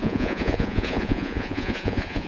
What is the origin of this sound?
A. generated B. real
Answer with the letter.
A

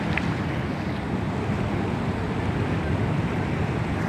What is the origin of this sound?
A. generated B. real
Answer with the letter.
A